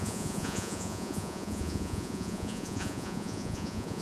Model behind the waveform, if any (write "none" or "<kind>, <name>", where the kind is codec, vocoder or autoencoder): vocoder, Vocos